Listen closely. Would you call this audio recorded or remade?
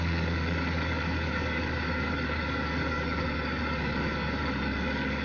remade